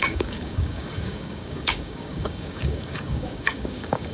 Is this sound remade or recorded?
remade